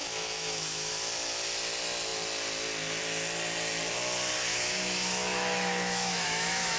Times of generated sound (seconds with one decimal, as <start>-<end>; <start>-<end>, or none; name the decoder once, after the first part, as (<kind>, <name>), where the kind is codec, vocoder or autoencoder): 0.0-0.9 (autoencoder, DAC-VAE); 4.5-6.8